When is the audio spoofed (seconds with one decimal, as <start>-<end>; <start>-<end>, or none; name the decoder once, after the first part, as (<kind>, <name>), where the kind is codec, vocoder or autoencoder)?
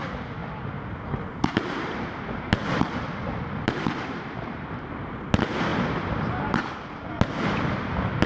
0.4-2.0 (vocoder, BigVGAN v2); 2.6-5.1; 5.7-7.1